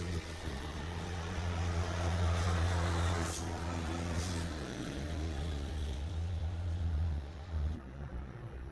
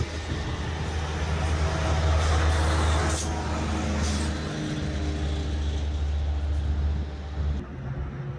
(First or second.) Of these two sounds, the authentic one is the second